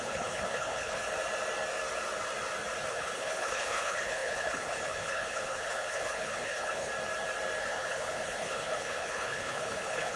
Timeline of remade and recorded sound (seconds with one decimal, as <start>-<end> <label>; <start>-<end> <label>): 0.0-1.0 remade; 1.0-2.9 recorded; 2.9-6.9 remade; 6.9-7.6 recorded; 7.6-10.2 remade

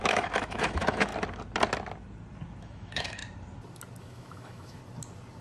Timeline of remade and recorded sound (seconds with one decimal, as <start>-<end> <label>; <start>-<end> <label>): 0.0-1.1 remade; 1.1-2.6 recorded; 2.6-3.2 remade; 3.2-4.0 recorded; 4.0-4.8 remade; 4.8-5.4 recorded